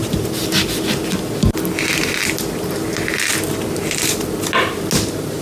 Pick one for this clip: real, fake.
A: real